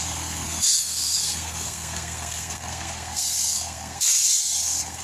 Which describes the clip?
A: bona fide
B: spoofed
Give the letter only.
B